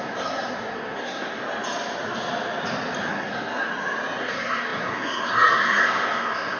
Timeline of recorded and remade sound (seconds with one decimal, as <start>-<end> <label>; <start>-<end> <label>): 0.0-1.4 remade; 1.4-3.1 recorded; 3.1-3.7 remade; 3.7-4.2 recorded; 4.2-6.6 remade